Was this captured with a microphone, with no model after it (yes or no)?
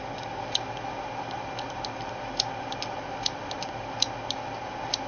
yes